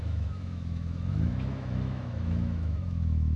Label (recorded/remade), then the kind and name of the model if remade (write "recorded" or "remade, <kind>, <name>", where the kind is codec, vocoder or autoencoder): remade, autoencoder, DAC-VAE